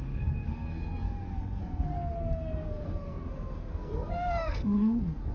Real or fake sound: fake